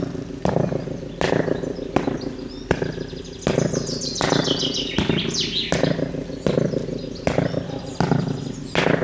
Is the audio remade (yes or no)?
no